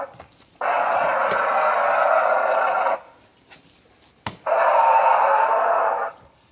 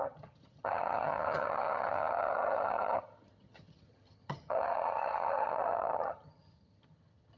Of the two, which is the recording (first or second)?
first